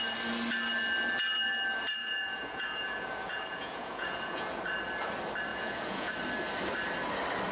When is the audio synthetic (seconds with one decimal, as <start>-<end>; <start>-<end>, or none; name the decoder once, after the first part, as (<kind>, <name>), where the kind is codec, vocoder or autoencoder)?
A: 2.0-4.6 (vocoder, Vocos); 5.5-6.1